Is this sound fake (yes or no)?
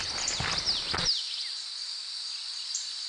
no